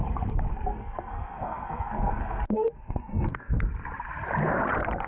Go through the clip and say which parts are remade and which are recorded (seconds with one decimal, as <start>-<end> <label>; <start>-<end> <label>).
0.0-0.5 recorded; 0.5-3.6 remade; 3.6-5.1 recorded